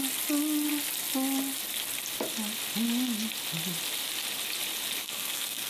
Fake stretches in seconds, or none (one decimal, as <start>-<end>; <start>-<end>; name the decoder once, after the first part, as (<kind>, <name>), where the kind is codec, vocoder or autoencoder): 5.0-5.7 (codec, SNAC)